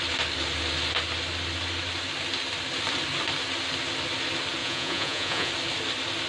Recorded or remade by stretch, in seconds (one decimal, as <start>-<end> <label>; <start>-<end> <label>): 0.0-4.6 recorded; 4.6-5.5 remade; 5.5-6.3 recorded